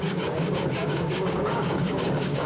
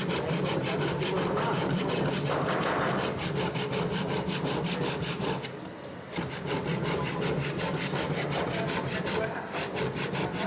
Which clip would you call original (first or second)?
second